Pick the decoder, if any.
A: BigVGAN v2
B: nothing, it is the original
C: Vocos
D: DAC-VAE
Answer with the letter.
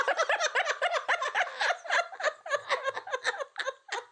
B